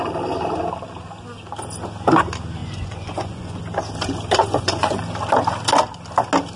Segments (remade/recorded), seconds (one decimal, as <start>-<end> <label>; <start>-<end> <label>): 0.0-2.6 recorded; 2.6-3.6 remade; 3.6-4.4 recorded; 4.4-5.0 remade; 5.0-6.6 recorded